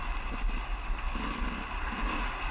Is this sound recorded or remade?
recorded